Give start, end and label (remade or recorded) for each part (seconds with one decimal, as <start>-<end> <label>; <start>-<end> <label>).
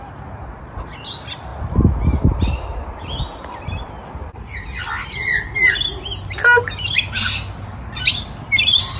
0.0-9.0 recorded